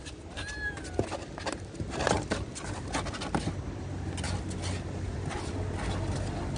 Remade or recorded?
recorded